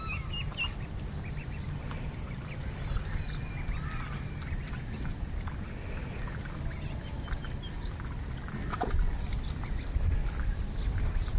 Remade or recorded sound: recorded